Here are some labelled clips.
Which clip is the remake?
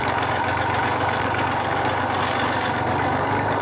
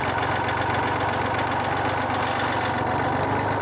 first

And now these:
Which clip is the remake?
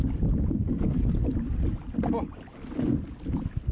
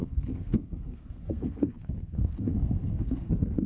second